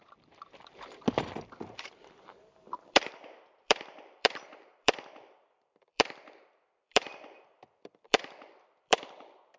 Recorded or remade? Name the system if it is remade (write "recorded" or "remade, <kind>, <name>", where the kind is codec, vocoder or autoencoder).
remade, vocoder, BigVGAN v2